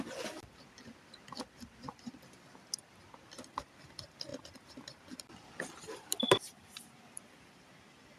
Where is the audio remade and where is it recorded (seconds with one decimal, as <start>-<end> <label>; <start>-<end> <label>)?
0.0-8.2 recorded